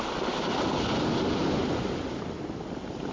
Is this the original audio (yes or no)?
yes